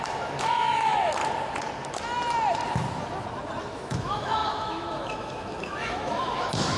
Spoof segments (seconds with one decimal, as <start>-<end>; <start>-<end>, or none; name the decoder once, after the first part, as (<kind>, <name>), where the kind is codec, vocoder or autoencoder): 0.0-1.2 (autoencoder, DAC-VAE); 3.6-6.8

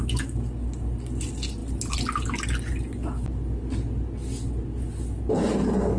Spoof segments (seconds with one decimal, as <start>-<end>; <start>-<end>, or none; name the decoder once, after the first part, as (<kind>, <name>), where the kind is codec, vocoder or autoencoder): none

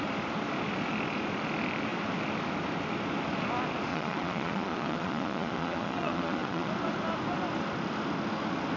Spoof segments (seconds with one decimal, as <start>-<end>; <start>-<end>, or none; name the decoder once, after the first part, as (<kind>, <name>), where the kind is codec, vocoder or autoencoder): 3.9-6.7 (vocoder, Vocos)

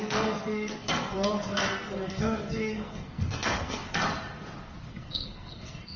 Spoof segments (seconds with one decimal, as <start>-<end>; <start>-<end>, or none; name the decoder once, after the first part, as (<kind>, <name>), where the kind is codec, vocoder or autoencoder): 0.0-4.0 (codec, SNAC); 4.9-6.0

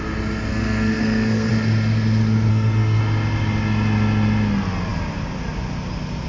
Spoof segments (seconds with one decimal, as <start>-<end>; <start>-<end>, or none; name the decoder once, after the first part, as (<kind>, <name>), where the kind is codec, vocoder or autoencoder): 0.5-1.5 (codec, SNAC); 2.5-3.0

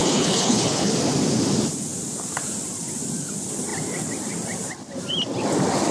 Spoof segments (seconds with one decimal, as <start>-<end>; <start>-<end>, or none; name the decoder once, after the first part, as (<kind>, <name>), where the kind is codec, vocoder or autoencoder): 0.0-0.9 (codec, HILCodec)